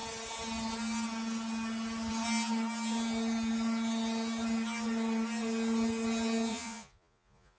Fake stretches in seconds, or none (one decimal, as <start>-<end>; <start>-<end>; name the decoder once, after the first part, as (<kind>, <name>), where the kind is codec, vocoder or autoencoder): 6.5-7.6 (vocoder, Vocos)